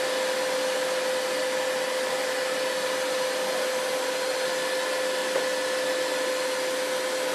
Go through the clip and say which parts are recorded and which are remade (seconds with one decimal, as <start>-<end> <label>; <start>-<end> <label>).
0.0-7.3 recorded